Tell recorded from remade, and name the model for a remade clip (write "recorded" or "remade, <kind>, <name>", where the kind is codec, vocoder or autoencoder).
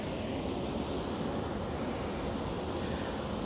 recorded